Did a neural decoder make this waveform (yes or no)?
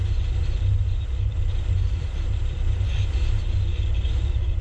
yes